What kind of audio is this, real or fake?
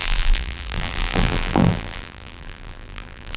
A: fake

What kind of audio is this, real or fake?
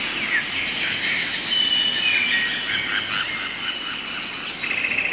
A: real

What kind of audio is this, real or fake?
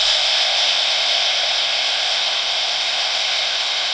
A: fake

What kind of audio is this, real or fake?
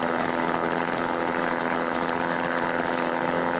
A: fake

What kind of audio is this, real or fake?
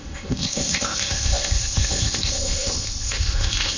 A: fake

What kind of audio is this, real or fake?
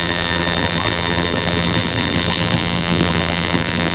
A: fake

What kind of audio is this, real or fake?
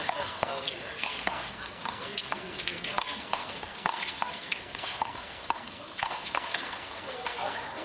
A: fake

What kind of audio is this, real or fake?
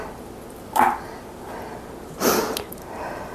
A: real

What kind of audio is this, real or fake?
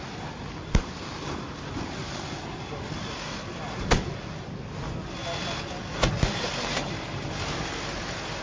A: real